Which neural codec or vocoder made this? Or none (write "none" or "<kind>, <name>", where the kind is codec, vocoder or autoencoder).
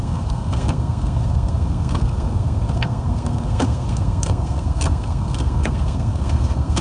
codec, SNAC